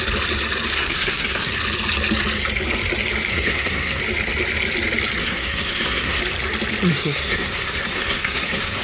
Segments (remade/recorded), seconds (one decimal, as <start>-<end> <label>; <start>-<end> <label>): 0.0-0.7 recorded; 0.7-1.5 remade; 1.5-3.3 recorded; 3.3-4.0 remade; 4.0-5.2 recorded; 5.2-6.2 remade; 6.2-6.9 recorded; 6.9-8.8 remade